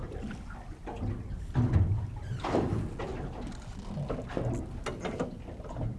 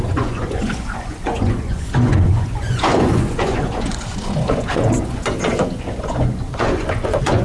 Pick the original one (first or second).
first